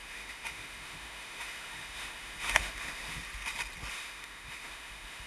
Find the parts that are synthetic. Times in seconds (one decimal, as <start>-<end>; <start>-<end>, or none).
0.0-3.2; 3.9-5.3